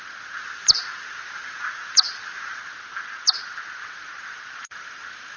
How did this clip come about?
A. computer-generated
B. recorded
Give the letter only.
B